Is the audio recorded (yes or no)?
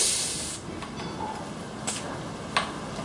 yes